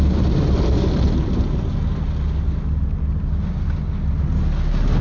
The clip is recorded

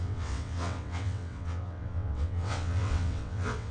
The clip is remade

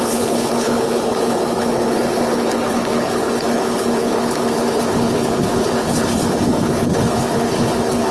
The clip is remade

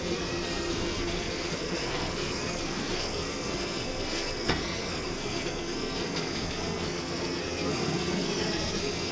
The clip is remade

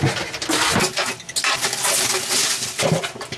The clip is recorded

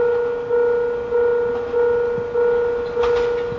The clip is recorded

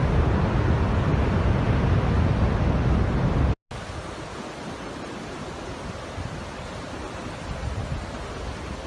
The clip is recorded